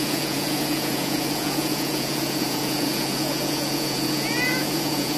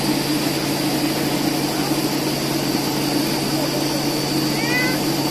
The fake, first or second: first